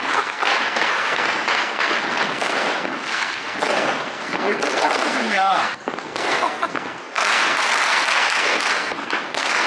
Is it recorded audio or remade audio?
remade